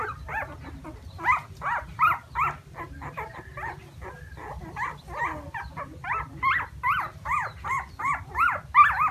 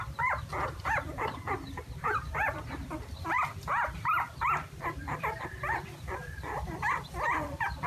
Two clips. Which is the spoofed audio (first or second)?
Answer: second